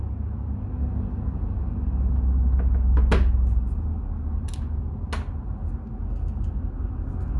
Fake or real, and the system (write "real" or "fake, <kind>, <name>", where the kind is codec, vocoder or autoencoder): real